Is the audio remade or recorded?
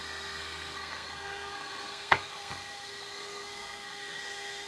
remade